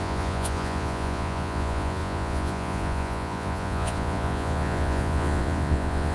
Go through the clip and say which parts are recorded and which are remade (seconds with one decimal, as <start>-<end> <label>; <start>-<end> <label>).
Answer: 0.0-6.1 remade